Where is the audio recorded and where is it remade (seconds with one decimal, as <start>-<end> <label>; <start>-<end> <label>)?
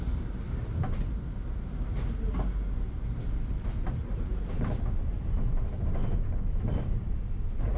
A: 0.0-4.1 recorded; 4.1-4.7 remade; 4.7-7.8 recorded